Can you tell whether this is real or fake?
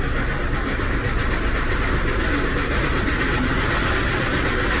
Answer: real